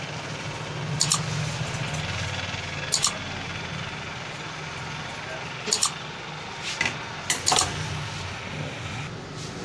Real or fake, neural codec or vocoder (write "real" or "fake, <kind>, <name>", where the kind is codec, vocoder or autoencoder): real